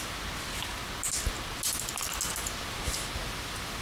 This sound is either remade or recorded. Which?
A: recorded